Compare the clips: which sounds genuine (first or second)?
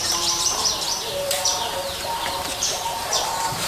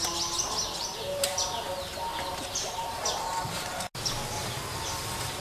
second